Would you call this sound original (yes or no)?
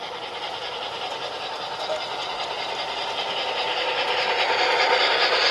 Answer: yes